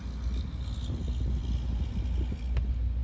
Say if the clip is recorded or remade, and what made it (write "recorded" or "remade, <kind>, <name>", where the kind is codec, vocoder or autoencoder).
recorded